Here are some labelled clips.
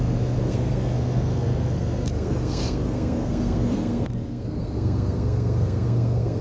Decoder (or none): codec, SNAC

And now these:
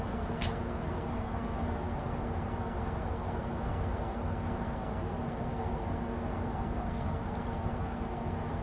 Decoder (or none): codec, SNAC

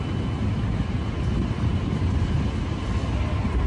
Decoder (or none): none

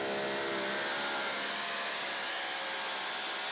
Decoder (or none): none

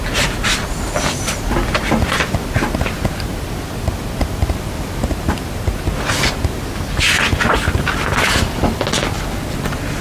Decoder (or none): none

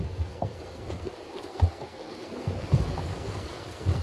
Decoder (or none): codec, SNAC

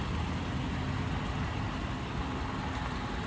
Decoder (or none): none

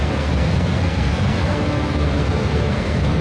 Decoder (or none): codec, SNAC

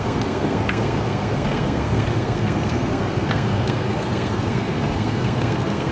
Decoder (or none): codec, SNAC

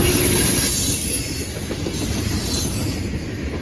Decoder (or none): none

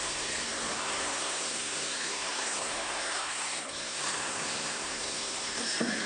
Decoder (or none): codec, SNAC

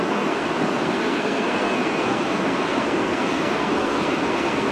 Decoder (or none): codec, SNAC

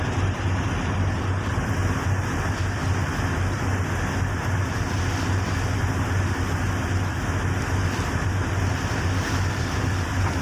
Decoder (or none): none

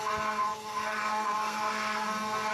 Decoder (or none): codec, SNAC